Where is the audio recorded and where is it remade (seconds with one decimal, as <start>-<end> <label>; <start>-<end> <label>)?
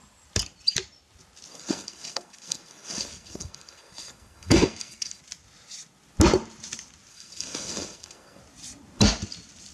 0.0-1.5 recorded; 1.5-5.2 remade; 5.2-7.1 recorded; 7.1-8.4 remade; 8.4-9.7 recorded